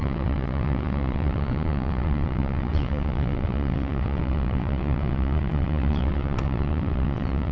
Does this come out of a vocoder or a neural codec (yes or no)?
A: yes